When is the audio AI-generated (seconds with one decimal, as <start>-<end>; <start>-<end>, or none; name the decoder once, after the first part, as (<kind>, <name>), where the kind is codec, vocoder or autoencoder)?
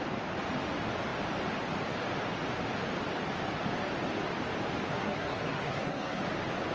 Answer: 4.9-6.2 (codec, SNAC)